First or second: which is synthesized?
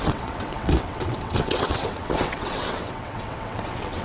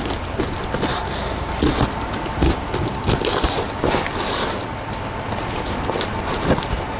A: first